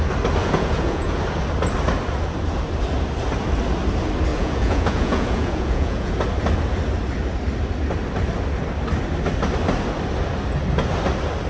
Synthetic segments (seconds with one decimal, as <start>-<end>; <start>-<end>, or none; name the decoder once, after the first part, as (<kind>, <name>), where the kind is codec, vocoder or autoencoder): 0.4-1.2 (vocoder, Vocos); 4.3-6.1